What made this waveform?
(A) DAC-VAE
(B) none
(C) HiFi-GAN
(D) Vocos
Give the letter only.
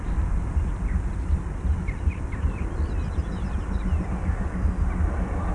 B